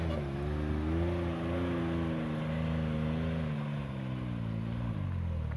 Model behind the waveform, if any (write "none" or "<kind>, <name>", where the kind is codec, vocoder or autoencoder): none